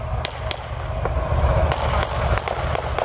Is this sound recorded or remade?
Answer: recorded